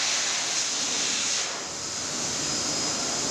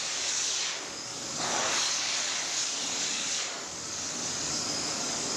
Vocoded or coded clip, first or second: second